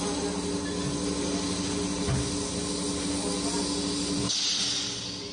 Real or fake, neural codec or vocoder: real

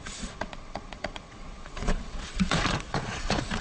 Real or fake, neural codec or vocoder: fake, vocoder, Vocos